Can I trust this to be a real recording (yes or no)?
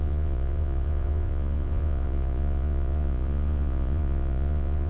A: no